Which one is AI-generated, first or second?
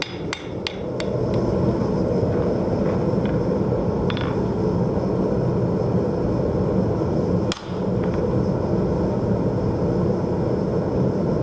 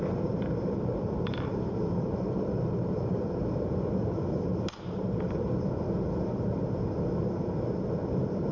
second